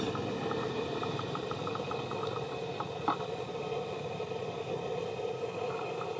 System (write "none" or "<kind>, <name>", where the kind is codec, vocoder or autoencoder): none